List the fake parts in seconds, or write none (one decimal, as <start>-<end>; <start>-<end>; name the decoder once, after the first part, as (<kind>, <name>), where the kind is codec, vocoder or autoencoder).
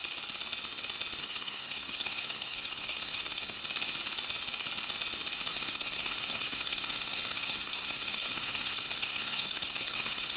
1.2-3.6 (codec, SNAC); 5.5-10.4